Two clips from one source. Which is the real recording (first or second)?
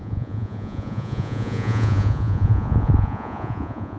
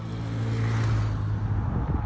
second